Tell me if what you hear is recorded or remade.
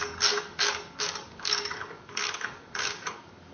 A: remade